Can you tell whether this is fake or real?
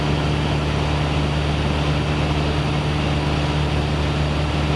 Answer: real